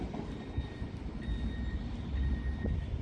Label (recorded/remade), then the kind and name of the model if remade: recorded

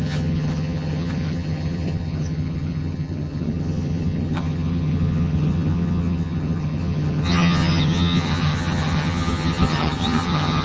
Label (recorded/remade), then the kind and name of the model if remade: remade, vocoder, HiFi-GAN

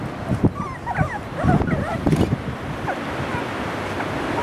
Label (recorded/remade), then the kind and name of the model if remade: recorded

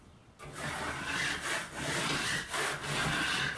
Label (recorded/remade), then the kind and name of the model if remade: recorded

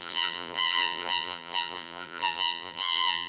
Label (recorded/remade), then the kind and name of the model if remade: remade, vocoder, BigVGAN v2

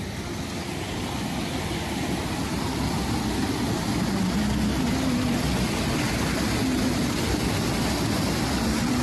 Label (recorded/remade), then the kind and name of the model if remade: recorded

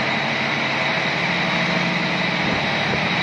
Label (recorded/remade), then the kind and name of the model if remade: recorded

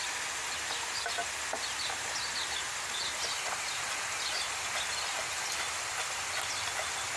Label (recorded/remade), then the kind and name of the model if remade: recorded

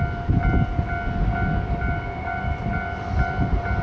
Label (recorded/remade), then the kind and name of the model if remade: recorded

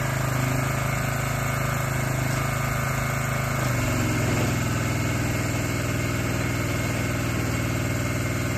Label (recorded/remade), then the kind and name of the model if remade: recorded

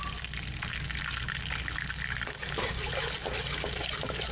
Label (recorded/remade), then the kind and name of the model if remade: recorded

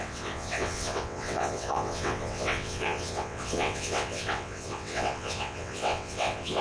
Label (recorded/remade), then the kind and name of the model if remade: remade, vocoder, WaveNeXt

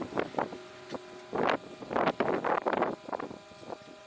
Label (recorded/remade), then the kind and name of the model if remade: recorded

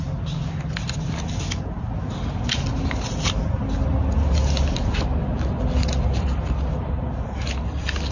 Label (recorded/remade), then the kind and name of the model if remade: recorded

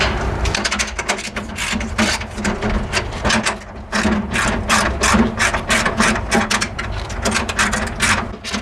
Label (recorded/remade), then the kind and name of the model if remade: recorded